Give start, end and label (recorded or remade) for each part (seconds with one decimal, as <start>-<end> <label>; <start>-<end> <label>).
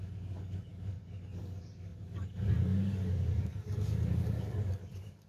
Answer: 0.0-5.3 remade